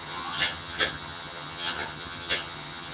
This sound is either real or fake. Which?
fake